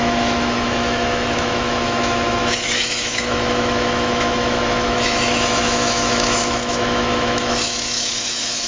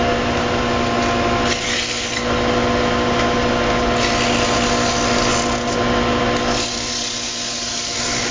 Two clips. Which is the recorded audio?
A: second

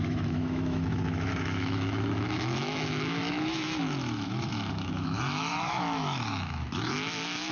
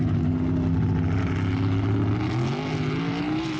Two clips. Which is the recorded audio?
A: second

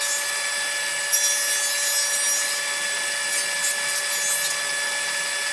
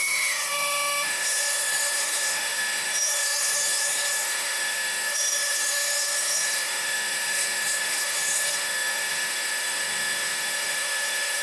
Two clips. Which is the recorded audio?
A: first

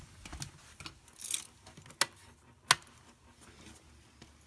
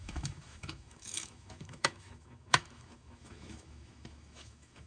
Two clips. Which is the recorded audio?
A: first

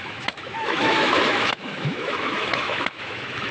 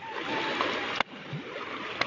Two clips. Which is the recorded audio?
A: second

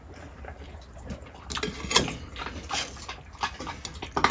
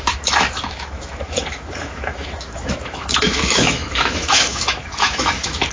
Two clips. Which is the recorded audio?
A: first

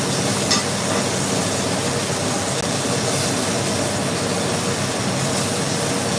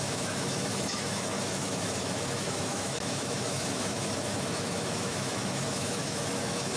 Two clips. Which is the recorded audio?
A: first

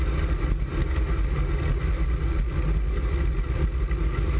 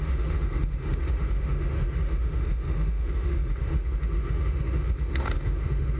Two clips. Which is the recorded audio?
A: first